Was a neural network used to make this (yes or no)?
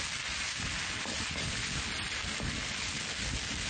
no